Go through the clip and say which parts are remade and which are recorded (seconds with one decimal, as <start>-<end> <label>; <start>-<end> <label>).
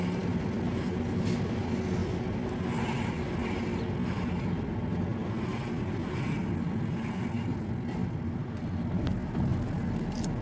0.0-10.4 recorded